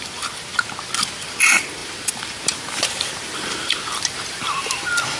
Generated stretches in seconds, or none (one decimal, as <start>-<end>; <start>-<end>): 0.0-0.5; 1.2-5.2